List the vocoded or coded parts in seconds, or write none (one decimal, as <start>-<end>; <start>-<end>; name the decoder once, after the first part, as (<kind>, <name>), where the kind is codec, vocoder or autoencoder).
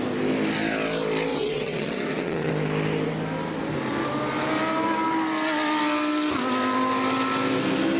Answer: 1.3-2.5 (vocoder, WaveNeXt)